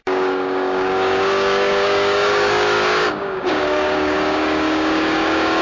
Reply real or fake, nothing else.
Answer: fake